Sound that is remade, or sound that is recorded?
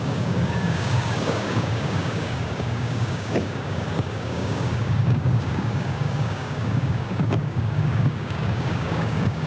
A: remade